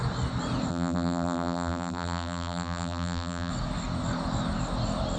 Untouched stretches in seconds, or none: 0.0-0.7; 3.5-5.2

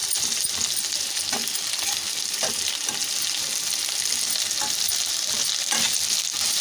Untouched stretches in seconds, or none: 0.0-6.6

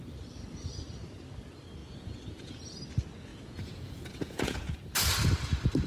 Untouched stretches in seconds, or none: 0.0-1.8; 2.6-3.3; 4.8-5.9

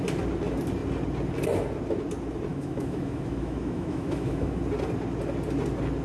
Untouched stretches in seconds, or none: 0.0-2.5; 4.6-6.0

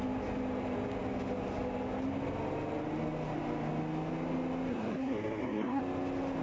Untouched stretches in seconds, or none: 0.0-4.7; 5.8-6.4